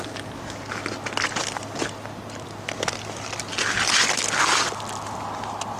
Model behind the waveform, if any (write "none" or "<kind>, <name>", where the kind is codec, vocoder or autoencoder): none